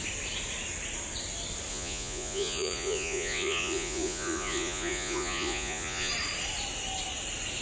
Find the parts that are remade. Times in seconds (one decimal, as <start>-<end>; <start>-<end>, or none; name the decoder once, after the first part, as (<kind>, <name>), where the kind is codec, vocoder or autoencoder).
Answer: 1.7-6.1 (vocoder, Vocos)